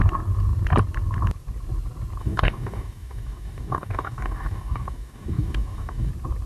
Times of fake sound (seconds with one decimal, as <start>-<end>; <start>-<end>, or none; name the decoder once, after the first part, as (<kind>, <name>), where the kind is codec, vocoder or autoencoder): 2.2-6.1 (codec, DAC)